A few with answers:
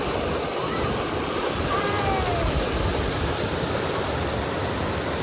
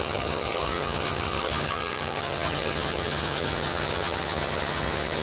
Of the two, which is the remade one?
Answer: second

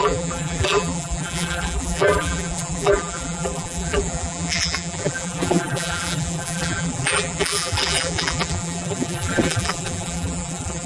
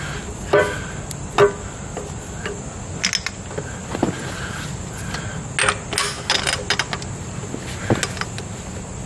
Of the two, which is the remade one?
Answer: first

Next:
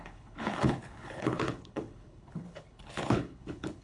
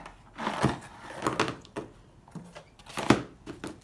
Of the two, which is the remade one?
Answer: first